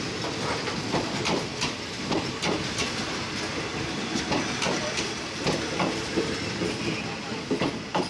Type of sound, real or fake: real